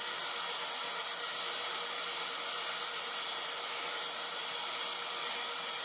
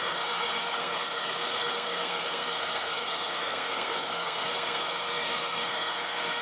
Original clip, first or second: first